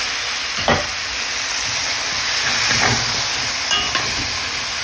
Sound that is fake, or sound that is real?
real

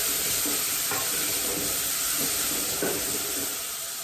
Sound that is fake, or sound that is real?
fake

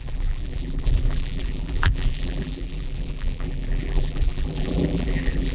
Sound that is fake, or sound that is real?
fake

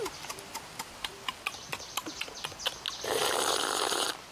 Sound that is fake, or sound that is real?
real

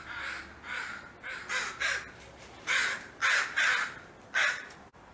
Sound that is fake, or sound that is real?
real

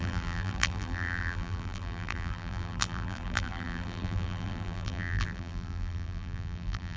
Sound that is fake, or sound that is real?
fake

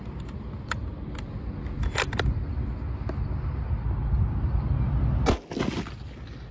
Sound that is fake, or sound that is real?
real